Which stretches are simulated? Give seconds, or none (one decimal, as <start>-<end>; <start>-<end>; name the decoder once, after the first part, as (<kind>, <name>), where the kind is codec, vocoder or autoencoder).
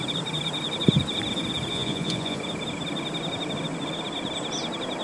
1.7-2.4 (vocoder, Vocos)